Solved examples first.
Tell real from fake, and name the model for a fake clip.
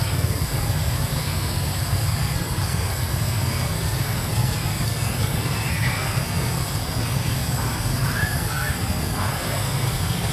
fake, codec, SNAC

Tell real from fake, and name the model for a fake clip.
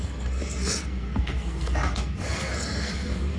fake, codec, SNAC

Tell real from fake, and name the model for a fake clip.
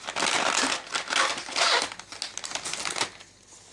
real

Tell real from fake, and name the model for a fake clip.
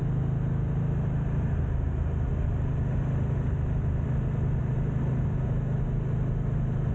real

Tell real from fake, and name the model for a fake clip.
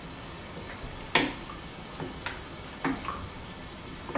real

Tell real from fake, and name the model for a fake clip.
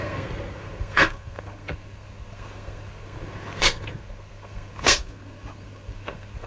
fake, codec, SNAC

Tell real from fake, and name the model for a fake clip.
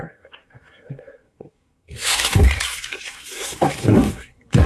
fake, codec, SNAC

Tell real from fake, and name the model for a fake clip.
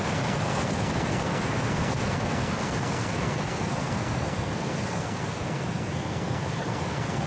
fake, codec, SNAC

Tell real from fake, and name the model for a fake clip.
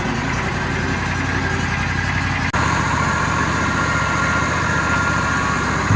real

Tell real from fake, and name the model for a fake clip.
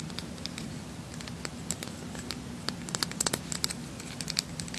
real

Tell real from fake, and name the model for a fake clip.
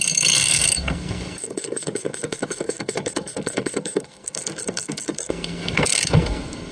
fake, codec, SNAC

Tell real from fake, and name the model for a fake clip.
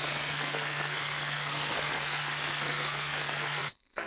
fake, codec, SNAC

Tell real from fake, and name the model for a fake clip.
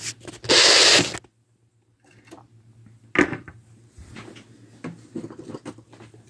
real